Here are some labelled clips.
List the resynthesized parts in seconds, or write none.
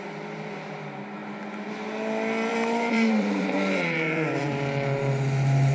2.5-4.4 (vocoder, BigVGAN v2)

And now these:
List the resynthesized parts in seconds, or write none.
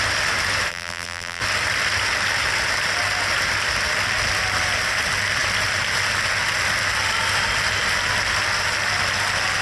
0.7-1.4 (vocoder, BigVGAN v2)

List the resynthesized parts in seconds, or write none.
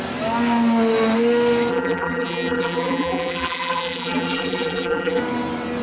1.7-5.2 (vocoder, BigVGAN v2)